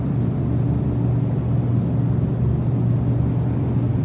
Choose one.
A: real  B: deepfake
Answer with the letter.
A